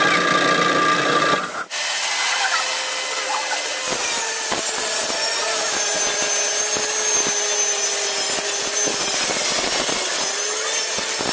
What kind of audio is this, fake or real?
real